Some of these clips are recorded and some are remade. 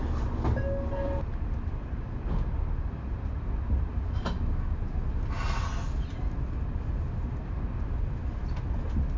recorded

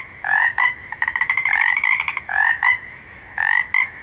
remade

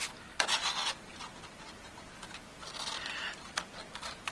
recorded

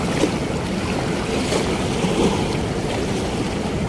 recorded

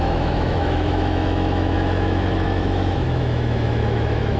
remade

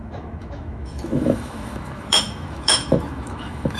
remade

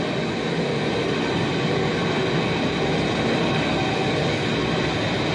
recorded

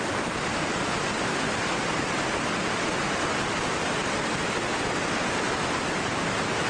recorded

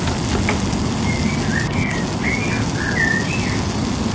recorded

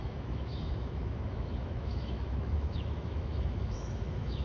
remade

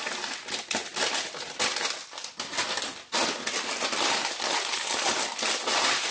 recorded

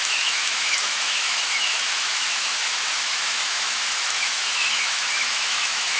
remade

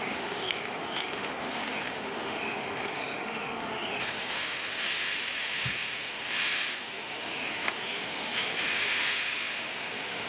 remade